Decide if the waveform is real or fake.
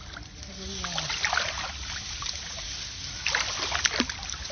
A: real